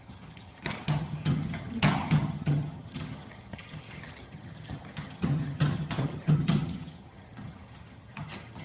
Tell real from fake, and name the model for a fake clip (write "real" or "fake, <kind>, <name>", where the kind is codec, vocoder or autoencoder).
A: fake, vocoder, HiFi-GAN